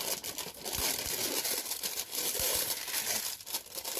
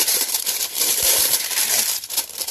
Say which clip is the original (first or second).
first